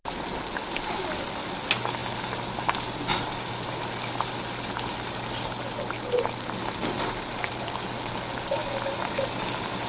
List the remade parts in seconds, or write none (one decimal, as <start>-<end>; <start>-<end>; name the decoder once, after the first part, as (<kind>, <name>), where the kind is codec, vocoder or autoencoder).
none